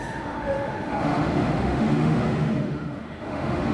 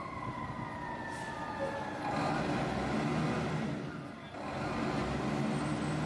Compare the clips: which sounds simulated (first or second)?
first